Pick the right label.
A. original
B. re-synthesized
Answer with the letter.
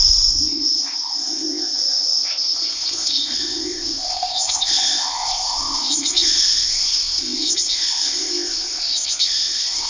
B